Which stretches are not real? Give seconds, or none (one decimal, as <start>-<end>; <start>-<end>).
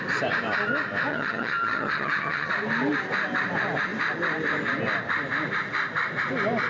1.1-2.5